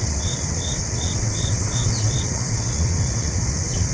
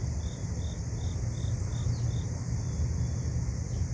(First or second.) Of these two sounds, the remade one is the first